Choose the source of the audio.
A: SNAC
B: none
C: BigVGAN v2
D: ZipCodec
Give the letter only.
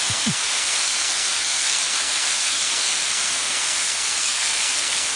A